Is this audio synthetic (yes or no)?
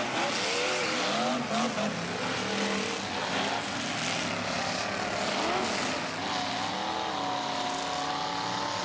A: no